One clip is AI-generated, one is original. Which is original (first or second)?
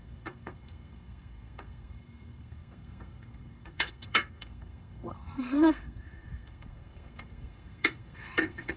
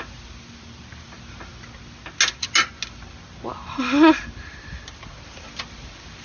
second